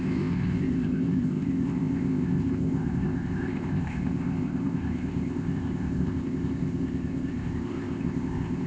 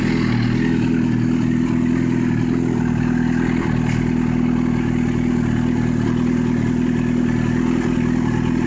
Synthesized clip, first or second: first